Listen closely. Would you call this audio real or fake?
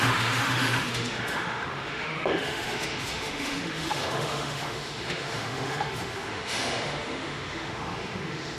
fake